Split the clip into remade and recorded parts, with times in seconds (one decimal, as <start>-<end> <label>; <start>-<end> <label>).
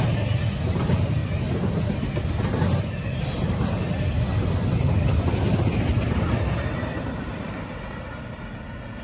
0.0-9.0 recorded